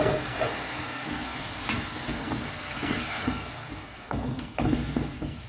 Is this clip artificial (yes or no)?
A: yes